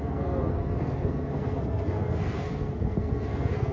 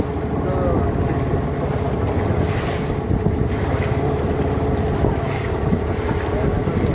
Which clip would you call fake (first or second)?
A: first